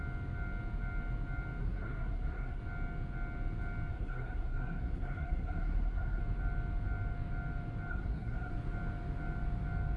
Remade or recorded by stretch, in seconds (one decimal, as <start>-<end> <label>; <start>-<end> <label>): 0.0-1.6 recorded; 1.6-2.6 remade; 2.6-3.9 recorded; 3.9-6.2 remade; 6.2-7.9 recorded; 7.9-8.5 remade; 8.5-10.0 recorded